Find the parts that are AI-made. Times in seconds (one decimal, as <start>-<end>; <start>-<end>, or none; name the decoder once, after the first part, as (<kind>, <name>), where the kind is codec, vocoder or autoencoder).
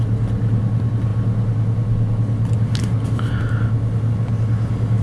none